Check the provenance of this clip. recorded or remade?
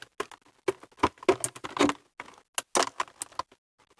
recorded